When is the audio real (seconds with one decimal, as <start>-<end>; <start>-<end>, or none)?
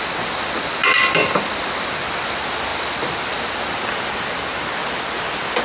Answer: 0.0-5.6